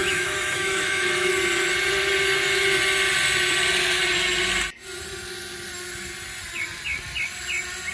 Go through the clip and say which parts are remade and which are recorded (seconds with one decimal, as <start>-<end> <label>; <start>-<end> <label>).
0.0-1.3 remade; 1.3-7.9 recorded